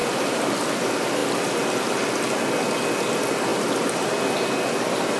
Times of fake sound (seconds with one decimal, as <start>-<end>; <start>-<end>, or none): 0.0-0.5; 3.5-4.1